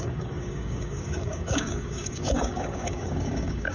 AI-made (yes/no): yes